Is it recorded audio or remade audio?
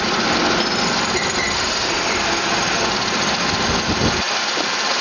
recorded